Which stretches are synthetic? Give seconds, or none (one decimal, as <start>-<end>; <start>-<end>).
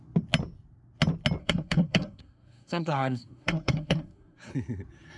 1.4-4.5